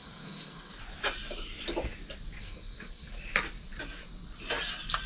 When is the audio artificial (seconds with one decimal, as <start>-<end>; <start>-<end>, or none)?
0.0-0.7; 2.4-3.1